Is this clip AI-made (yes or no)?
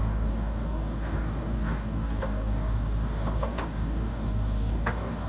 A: yes